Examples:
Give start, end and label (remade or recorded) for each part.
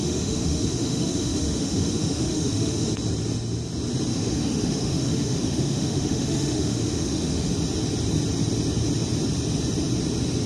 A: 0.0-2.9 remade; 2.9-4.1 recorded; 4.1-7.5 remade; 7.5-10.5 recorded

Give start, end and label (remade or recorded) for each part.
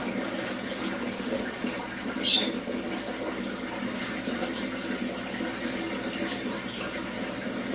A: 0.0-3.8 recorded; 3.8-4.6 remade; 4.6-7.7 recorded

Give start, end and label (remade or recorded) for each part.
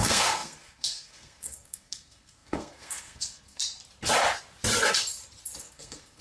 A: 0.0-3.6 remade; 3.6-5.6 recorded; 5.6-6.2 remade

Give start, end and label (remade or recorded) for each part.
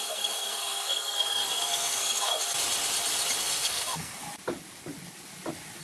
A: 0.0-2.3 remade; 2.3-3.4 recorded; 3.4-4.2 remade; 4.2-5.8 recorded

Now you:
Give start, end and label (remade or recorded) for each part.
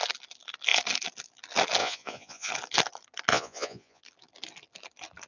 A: 0.0-1.8 recorded; 1.8-2.5 remade; 2.5-3.3 recorded; 3.3-4.0 remade; 4.0-5.3 recorded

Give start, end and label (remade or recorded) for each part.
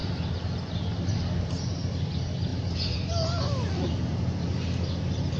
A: 0.0-5.4 recorded